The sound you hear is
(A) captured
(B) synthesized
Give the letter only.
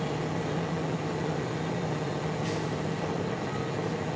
A